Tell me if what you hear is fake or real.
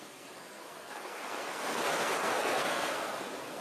fake